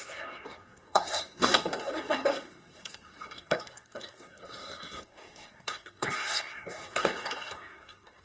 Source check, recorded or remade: remade